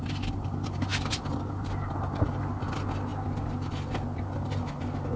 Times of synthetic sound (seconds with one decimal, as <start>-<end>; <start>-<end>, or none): none